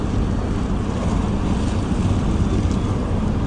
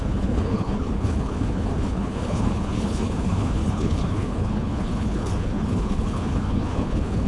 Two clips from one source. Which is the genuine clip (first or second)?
first